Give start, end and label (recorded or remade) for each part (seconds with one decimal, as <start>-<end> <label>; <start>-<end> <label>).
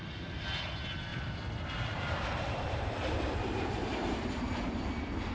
0.0-1.1 recorded; 1.1-4.3 remade; 4.3-5.3 recorded